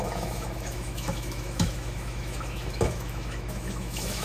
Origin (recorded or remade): remade